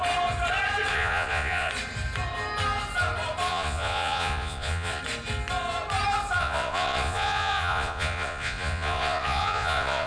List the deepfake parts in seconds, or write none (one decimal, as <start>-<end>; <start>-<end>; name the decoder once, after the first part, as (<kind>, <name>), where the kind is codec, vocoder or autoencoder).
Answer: 0.9-1.7 (vocoder, Vocos); 3.5-5.0; 6.4-10.1